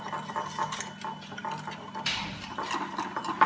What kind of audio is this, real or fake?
real